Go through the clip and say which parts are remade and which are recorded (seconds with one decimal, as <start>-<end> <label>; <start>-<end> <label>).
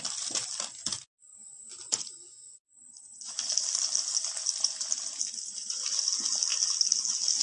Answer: 0.0-7.4 recorded